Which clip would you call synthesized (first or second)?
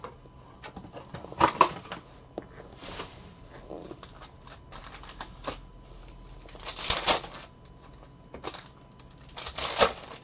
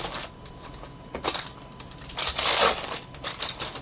second